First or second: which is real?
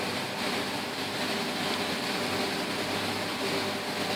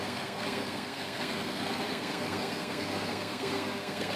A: first